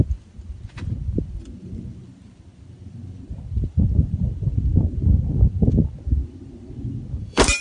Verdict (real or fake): fake